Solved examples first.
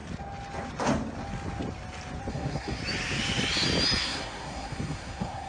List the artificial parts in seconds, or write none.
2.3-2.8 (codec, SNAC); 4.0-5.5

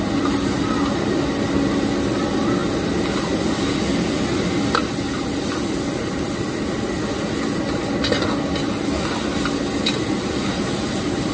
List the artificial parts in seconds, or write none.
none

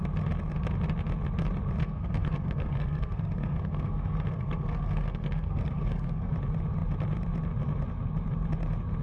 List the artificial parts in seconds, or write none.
1.8-6.3 (codec, SNAC)

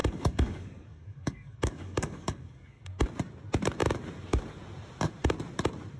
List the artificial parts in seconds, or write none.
0.0-2.8 (codec, DAC)

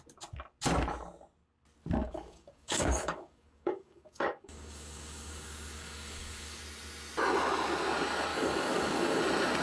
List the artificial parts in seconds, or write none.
2.0-6.6 (codec, DAC); 8.3-9.2

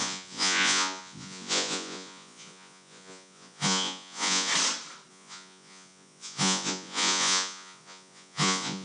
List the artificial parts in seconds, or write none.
0.0-4.5 (vocoder, Vocos); 5.1-8.8

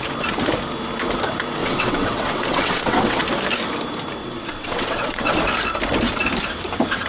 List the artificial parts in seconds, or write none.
1.6-3.2 (vocoder, WaveNeXt); 4.2-5.4